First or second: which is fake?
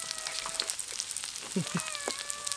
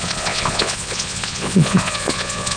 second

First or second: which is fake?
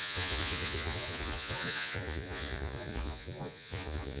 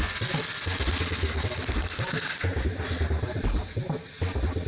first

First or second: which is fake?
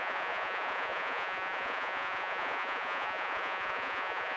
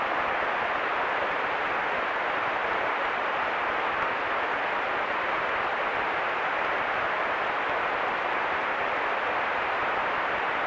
first